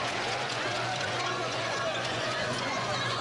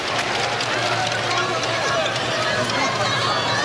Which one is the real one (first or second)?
second